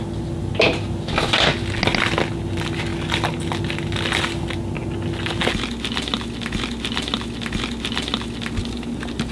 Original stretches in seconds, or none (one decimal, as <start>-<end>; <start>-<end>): 0.0-9.3